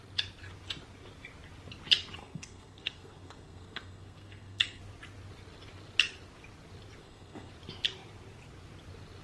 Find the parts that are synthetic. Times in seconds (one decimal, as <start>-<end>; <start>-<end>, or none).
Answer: 2.2-4.8; 7.0-7.5